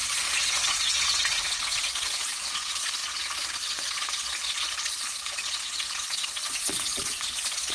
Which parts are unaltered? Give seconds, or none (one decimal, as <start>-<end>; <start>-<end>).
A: none